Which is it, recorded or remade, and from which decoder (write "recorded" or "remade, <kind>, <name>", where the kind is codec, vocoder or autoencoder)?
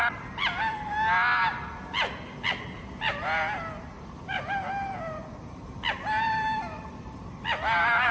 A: recorded